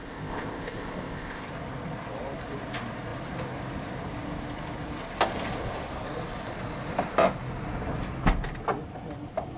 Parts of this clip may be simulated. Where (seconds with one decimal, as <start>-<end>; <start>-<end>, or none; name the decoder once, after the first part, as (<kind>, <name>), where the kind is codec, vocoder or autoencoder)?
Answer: 0.0-1.5 (codec, ZipCodec)

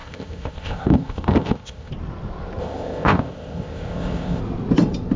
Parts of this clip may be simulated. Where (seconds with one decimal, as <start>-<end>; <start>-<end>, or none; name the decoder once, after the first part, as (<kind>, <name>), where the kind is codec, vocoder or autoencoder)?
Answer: 0.0-1.9 (codec, ZipCodec); 2.6-4.4